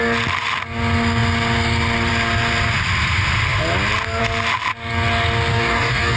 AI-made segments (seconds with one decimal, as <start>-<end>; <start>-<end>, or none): 5.5-6.2

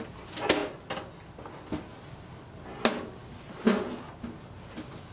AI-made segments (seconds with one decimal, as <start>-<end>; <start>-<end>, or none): none